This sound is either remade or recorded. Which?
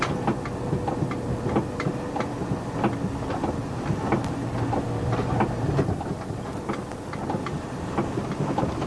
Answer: recorded